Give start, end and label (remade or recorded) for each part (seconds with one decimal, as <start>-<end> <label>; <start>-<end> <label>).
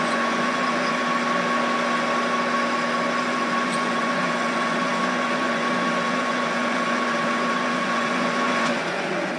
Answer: 0.0-1.0 remade; 1.0-3.2 recorded; 3.2-9.4 remade